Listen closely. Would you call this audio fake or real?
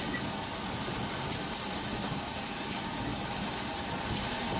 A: real